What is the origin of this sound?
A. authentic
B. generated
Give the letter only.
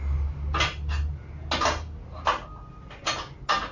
A